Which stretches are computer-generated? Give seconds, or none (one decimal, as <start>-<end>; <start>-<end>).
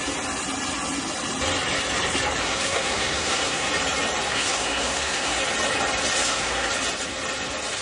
2.4-3.7; 4.3-5.4; 6.2-6.7